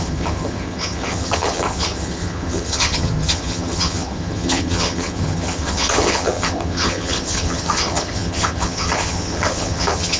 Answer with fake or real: fake